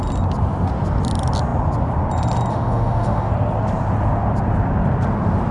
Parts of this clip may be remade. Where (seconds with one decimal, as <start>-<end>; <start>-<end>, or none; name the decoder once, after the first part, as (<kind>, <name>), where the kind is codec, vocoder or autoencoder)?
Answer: 2.5-3.3 (autoencoder, DAC-VAE)